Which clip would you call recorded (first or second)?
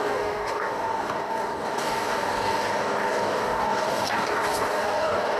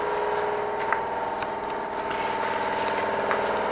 second